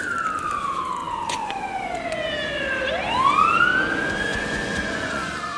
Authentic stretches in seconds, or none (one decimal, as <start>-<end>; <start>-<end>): 0.0-1.0; 1.9-4.3